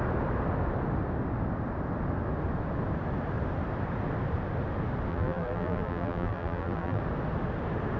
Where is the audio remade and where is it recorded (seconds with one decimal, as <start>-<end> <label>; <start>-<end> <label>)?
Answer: 0.0-5.1 recorded; 5.1-7.0 remade; 7.0-8.0 recorded